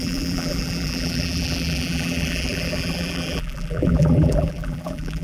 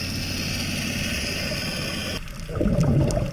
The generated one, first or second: first